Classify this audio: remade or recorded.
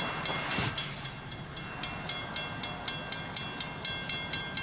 recorded